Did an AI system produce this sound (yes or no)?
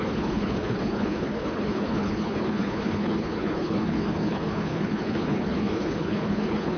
yes